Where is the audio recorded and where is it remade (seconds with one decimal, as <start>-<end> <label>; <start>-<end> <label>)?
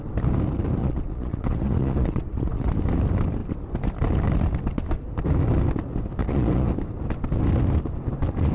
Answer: 0.0-0.8 recorded; 0.8-2.7 remade; 2.7-6.2 recorded; 6.2-6.7 remade; 6.7-8.5 recorded